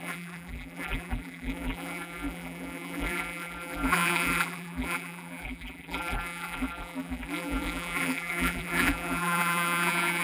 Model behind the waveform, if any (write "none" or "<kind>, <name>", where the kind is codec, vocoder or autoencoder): vocoder, BigVGAN v2